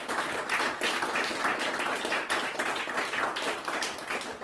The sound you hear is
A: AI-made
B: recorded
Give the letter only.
B